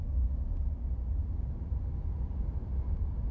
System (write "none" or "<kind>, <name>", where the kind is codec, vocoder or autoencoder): none